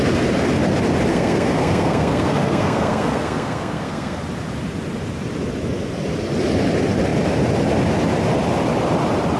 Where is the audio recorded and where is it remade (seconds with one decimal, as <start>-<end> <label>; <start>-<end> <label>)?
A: 0.0-1.1 recorded; 1.1-4.2 remade; 4.2-9.4 recorded